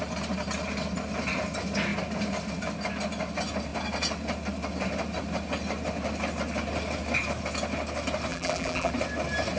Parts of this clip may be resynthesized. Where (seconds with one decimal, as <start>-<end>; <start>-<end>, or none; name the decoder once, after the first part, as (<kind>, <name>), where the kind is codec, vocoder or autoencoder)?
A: 8.3-8.9 (vocoder, BigVGAN v2)